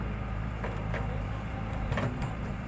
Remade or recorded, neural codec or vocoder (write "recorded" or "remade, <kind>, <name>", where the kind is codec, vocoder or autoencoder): remade, vocoder, BigVGAN v2